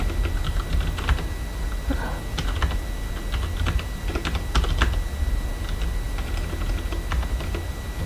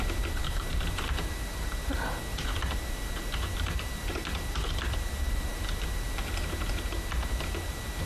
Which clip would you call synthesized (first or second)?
second